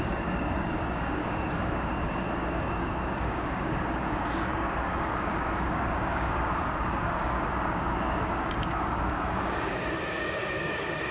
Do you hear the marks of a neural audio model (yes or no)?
yes